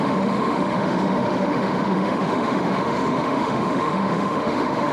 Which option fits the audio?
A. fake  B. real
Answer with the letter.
A